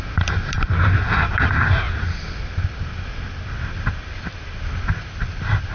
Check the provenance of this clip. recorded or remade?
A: recorded